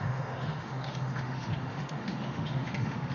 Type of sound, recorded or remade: remade